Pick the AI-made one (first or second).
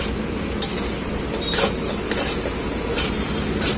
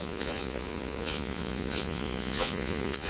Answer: second